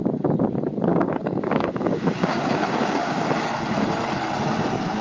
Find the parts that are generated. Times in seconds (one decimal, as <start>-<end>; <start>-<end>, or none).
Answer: 0.9-3.2

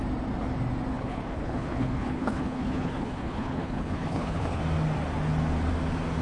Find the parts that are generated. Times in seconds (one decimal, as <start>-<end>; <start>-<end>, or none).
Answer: 0.9-4.6

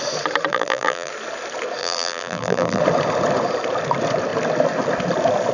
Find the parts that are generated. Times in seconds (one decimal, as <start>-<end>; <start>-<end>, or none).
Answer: 0.5-1.1; 1.8-2.8